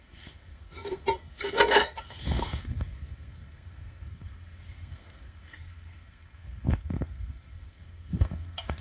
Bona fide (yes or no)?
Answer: no